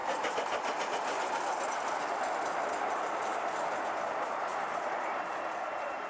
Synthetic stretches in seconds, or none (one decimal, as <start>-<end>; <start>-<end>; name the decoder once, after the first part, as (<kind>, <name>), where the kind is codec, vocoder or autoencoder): none